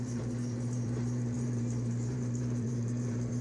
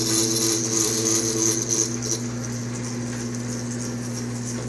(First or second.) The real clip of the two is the second